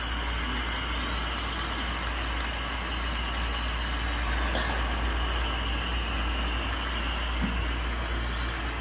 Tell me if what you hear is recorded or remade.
recorded